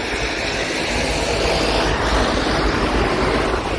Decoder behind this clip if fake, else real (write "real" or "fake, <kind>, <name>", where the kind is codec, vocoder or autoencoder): real